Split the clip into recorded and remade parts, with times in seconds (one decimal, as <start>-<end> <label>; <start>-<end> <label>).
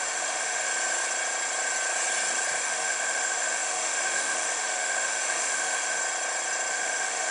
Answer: 0.0-0.7 remade; 0.7-2.6 recorded; 2.6-6.0 remade; 6.0-6.7 recorded; 6.7-7.3 remade